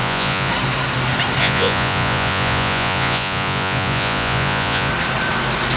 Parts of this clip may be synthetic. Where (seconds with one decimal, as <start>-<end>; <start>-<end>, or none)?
0.0-0.5; 1.4-4.9